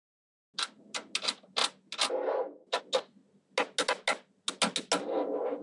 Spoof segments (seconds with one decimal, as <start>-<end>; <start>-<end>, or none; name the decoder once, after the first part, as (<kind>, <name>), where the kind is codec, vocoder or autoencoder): none